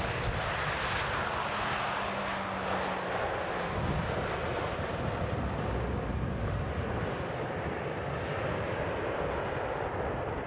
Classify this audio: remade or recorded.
recorded